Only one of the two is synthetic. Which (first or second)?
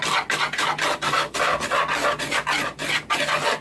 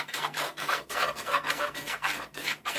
second